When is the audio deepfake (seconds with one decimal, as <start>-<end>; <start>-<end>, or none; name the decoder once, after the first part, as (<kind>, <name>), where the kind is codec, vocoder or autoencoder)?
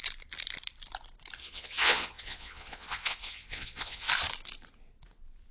1.4-4.1 (vocoder, Vocos)